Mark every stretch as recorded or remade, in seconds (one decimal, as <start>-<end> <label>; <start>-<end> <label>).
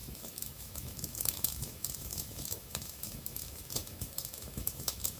0.0-5.2 remade